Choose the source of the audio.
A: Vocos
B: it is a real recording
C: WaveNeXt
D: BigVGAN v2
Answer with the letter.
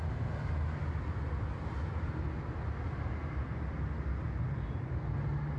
B